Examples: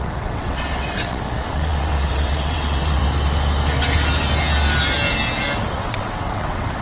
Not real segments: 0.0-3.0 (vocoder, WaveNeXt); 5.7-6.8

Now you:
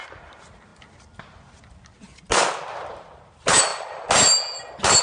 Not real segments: 0.0-0.7 (vocoder, BigVGAN v2); 2.9-3.7

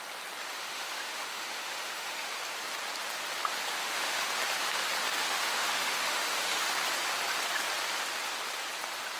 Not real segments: 0.6-2.4 (autoencoder, DAC-VAE); 3.8-4.3; 5.2-6.7

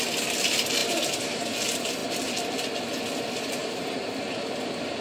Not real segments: 0.8-1.6 (vocoder, BigVGAN v2); 3.6-4.1